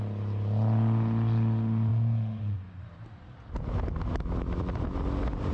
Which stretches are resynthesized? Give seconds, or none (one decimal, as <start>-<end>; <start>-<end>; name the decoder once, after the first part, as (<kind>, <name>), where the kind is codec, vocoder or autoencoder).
1.9-2.8 (vocoder, Vocos)